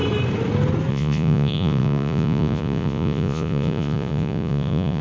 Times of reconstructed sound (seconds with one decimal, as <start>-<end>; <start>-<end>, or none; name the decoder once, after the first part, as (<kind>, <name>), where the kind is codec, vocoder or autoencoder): 0.9-5.0 (vocoder, Vocos)